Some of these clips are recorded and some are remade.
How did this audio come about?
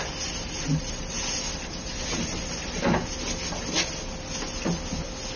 recorded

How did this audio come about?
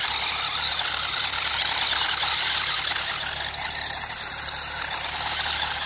recorded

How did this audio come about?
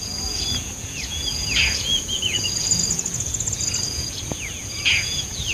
remade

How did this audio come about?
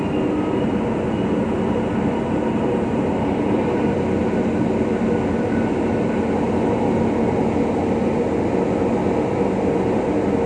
recorded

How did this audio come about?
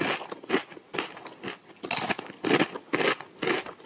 recorded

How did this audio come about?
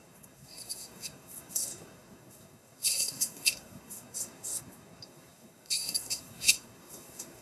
remade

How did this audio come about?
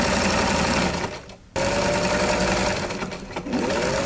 recorded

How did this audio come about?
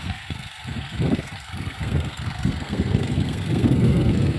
remade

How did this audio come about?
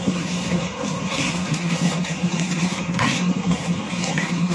remade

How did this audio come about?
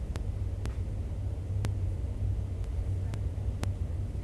recorded